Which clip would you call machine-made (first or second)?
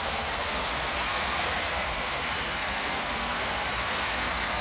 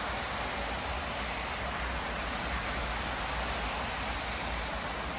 first